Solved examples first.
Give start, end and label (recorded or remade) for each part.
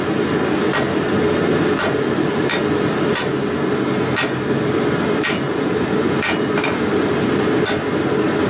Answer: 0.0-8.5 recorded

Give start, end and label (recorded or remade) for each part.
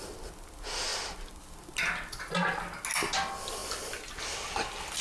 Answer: 0.0-5.0 recorded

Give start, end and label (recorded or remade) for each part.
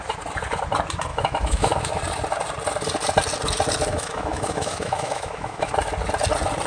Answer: 0.0-1.1 recorded; 1.1-2.0 remade; 2.0-3.9 recorded; 3.9-5.7 remade; 5.7-6.7 recorded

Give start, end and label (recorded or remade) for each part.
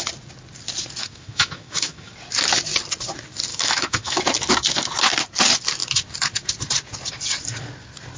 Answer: 0.0-1.0 recorded; 1.0-2.1 remade; 2.1-3.5 recorded; 3.5-4.2 remade; 4.2-8.2 recorded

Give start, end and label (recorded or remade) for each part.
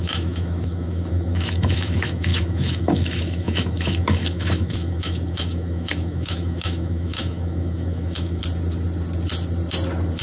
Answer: 0.0-8.4 remade; 8.4-10.2 recorded